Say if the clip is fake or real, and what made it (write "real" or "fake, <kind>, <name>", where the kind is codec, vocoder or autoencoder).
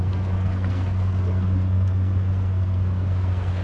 fake, codec, SNAC